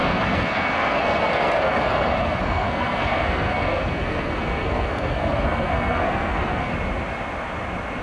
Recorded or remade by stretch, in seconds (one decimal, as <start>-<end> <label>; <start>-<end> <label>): 0.0-6.7 remade; 6.7-8.0 recorded